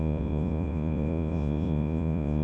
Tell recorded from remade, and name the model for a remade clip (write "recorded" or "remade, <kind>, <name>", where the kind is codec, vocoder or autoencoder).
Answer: remade, vocoder, Vocos